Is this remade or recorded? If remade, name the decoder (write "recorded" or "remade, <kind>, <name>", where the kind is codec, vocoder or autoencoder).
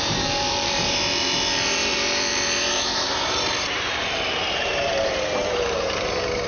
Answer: remade, vocoder, BigVGAN v2